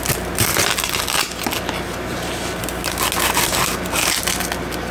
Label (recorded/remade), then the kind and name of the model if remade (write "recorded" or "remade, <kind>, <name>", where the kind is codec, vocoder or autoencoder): recorded